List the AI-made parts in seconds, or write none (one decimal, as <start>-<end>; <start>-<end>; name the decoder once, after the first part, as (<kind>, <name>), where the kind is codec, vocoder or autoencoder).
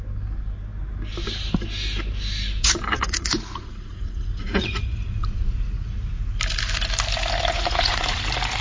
2.6-5.9 (vocoder, Vocos); 7.5-8.2